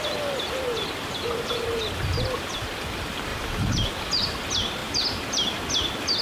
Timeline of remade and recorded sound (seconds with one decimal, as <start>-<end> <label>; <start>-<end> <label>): 0.0-3.3 recorded; 3.3-3.9 remade; 3.9-6.2 recorded